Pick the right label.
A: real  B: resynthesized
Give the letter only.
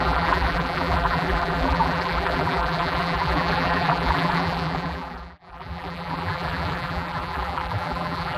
B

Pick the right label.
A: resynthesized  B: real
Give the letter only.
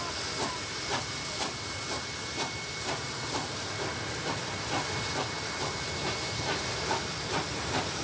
B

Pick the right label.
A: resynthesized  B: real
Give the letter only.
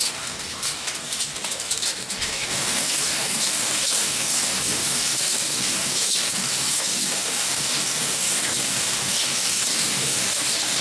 A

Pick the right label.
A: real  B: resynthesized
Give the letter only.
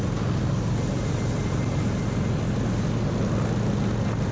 A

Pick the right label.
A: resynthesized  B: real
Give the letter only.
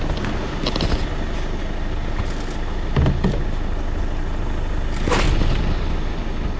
B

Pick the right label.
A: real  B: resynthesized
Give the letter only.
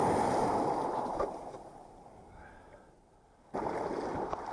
A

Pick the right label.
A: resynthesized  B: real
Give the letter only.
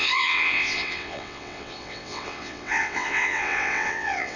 A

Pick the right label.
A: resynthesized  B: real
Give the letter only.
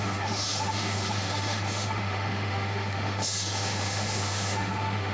A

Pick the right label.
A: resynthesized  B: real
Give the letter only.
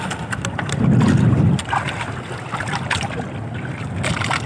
B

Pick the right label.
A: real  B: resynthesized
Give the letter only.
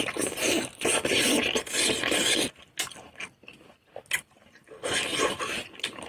A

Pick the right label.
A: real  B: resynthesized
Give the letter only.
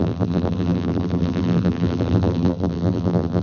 B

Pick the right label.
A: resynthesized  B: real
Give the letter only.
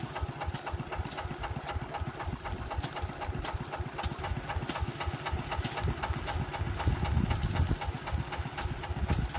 B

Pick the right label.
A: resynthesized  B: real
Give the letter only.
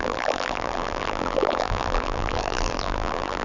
A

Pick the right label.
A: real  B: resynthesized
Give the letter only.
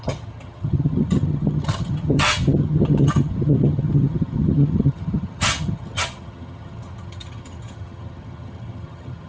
B